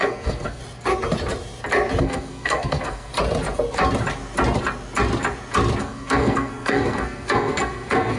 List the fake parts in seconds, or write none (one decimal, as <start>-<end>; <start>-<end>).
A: 0.0-0.6; 2.0-3.1; 5.8-8.2